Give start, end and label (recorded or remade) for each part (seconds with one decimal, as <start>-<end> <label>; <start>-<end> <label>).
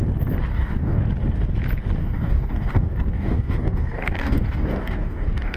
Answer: 0.0-0.5 recorded; 0.5-1.0 remade; 1.0-2.0 recorded; 2.0-5.6 remade